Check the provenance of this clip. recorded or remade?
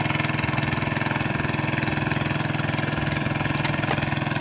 recorded